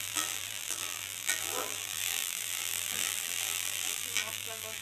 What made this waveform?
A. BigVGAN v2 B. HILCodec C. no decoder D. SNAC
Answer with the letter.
A